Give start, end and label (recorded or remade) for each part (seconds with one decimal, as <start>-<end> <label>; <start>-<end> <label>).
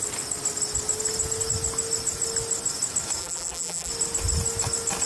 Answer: 0.0-3.2 recorded; 3.2-3.9 remade; 3.9-5.1 recorded